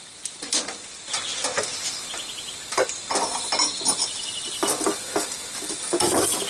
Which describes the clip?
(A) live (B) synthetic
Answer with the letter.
A